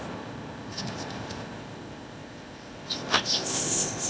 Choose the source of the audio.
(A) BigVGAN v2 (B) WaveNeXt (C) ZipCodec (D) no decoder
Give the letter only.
C